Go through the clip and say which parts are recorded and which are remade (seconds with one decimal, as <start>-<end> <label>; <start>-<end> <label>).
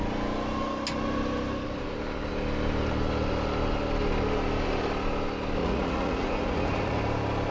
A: 0.0-5.6 recorded; 5.6-7.0 remade; 7.0-7.5 recorded